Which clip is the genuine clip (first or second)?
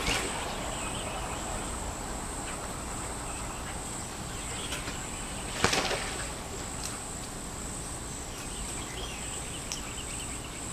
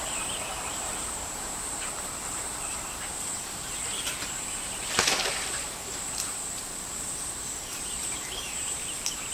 first